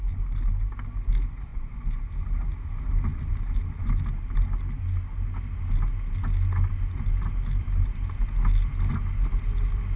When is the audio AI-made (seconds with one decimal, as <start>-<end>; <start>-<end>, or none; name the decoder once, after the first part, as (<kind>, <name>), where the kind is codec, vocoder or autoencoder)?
1.5-2.1 (vocoder, Vocos)